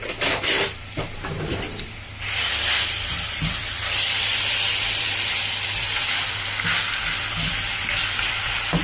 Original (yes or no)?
no